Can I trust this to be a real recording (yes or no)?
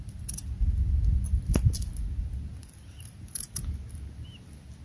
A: yes